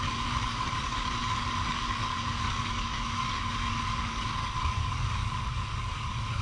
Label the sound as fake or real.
fake